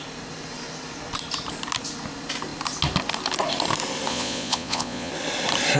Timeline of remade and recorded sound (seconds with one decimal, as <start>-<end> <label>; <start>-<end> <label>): 0.0-4.1 recorded; 4.1-5.1 remade; 5.1-5.8 recorded